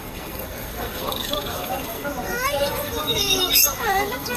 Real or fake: fake